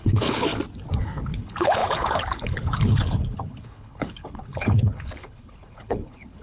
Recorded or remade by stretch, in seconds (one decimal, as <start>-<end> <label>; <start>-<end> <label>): 0.0-0.5 remade; 0.5-1.0 recorded; 1.0-6.4 remade